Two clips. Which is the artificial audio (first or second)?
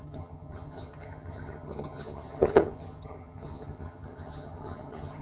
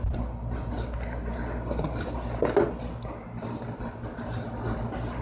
first